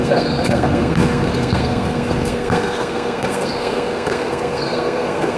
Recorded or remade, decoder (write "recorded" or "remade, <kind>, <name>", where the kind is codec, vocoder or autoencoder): remade, codec, SNAC